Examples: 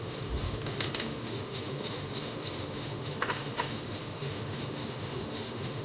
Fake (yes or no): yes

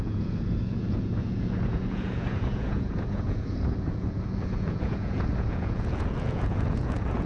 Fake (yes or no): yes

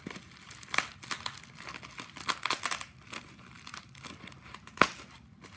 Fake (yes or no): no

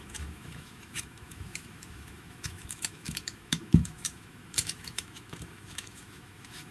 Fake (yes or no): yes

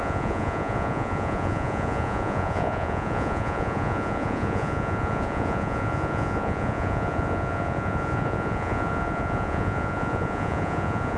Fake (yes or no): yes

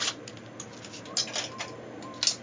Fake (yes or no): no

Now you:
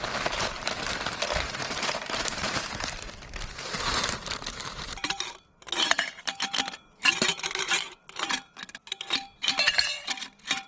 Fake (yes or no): yes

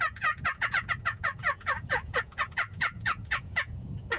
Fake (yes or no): yes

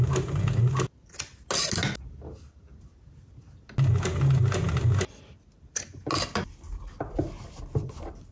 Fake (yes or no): no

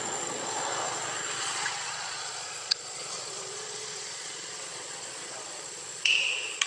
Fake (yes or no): yes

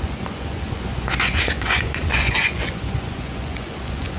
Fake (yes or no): yes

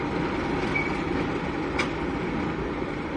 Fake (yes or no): no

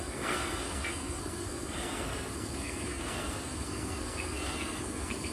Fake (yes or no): yes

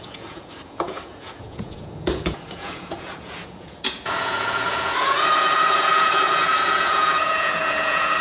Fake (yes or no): yes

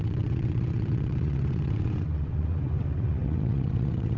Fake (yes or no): yes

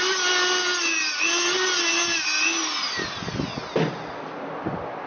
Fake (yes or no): no